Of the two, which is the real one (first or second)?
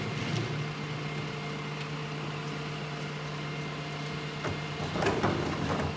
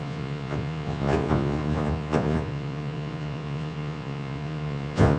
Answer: first